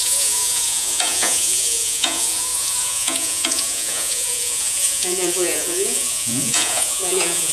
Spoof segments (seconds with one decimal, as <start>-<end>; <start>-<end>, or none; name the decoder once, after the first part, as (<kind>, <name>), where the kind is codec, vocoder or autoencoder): 0.0-7.5 (vocoder, Vocos)